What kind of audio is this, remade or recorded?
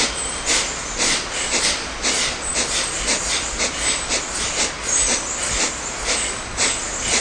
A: recorded